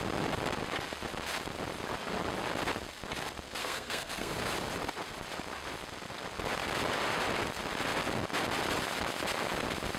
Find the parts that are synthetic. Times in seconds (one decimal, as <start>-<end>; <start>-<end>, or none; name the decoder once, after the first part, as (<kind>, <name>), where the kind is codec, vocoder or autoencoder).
3.6-4.3 (codec, SNAC)